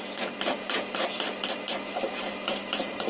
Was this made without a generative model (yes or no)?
yes